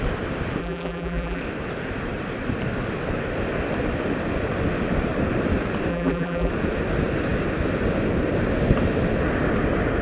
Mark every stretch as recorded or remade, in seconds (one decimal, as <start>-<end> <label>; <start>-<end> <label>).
0.0-0.6 recorded; 0.6-1.4 remade; 1.4-5.9 recorded; 5.9-6.5 remade; 6.5-10.0 recorded